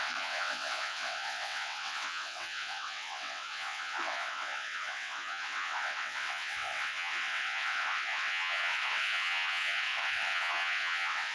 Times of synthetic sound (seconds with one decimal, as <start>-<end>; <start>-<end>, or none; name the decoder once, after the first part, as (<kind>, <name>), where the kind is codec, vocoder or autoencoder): 0.0-11.3 (vocoder, WaveNeXt)